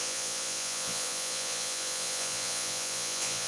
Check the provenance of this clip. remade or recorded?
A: remade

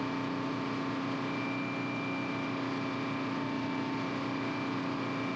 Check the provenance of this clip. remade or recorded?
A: recorded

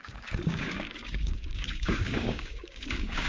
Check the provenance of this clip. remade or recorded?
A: remade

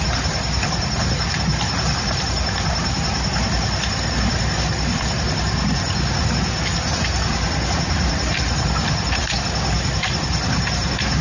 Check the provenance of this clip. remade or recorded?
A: recorded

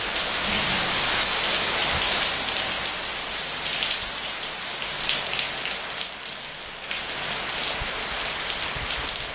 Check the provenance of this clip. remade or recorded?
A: recorded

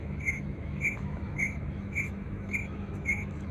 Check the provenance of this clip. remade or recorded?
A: remade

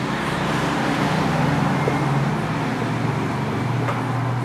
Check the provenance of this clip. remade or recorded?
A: recorded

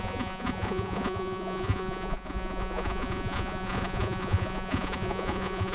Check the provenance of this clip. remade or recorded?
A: remade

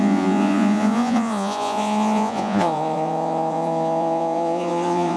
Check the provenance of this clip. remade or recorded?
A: remade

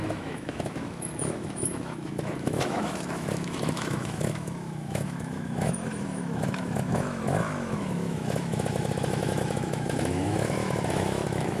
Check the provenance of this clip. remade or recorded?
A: remade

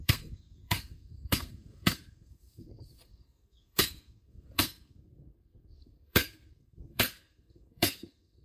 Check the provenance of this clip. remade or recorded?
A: remade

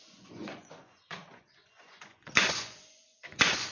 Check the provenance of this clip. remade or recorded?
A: remade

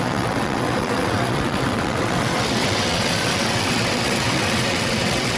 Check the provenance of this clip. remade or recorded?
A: remade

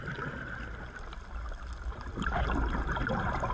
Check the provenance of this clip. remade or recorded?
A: recorded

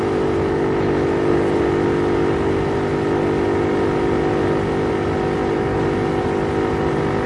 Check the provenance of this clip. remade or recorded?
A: recorded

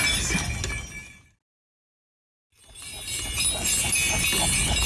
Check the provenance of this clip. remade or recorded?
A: recorded